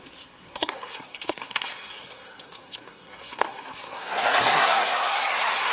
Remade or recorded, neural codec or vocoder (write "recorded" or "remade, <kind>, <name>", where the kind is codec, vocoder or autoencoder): remade, codec, SNAC